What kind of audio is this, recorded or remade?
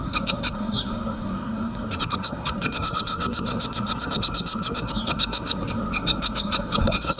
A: remade